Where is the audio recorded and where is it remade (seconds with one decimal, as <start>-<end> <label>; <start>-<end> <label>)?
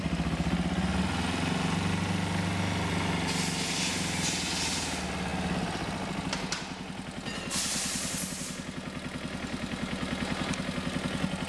0.0-11.5 recorded